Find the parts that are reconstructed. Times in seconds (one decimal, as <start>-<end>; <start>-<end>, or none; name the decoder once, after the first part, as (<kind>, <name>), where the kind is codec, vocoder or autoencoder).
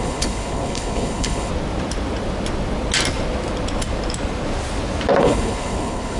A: 0.0-1.5 (codec, HILCodec); 5.2-6.2